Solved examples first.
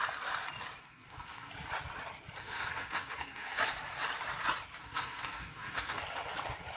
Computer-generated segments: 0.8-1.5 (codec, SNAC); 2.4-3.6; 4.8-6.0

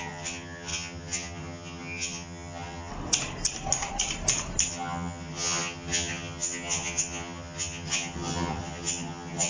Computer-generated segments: 0.0-2.9 (vocoder, HiFi-GAN); 4.7-9.5

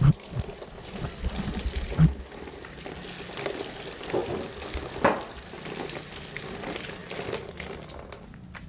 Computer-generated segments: none

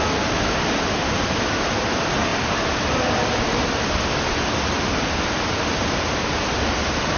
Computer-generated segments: none

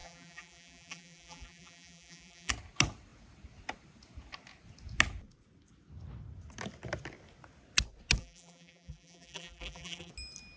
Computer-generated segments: 0.0-2.5 (vocoder, BigVGAN v2); 8.2-10.1

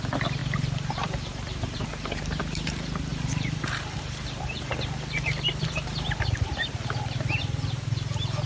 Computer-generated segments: 0.4-2.4 (vocoder, BigVGAN v2); 3.1-4.7